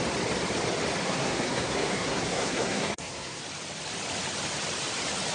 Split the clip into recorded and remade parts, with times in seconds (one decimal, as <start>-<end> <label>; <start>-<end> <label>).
0.0-1.0 recorded; 1.0-3.4 remade; 3.4-5.3 recorded